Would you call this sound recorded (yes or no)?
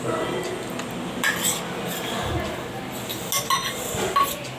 yes